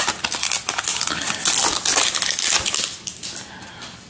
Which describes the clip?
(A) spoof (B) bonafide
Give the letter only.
B